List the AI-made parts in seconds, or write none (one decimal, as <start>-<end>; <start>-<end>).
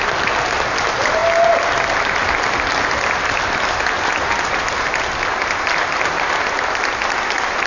none